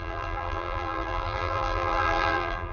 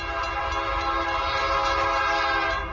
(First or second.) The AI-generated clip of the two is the first